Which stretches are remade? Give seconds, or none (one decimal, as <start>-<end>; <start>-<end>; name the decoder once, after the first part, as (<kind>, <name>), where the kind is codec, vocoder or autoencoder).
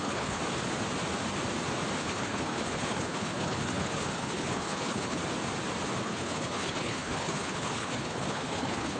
0.0-0.4 (codec, HILCodec); 2.0-5.2; 6.0-9.0